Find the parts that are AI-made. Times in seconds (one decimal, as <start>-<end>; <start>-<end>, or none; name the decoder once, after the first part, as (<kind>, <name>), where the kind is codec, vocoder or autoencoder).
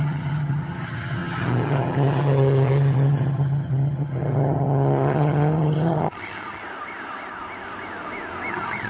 0.0-6.6 (vocoder, HiFi-GAN); 8.5-8.9